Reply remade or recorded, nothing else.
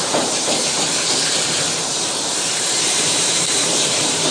remade